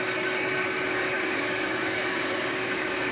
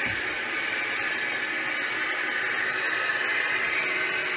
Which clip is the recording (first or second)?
second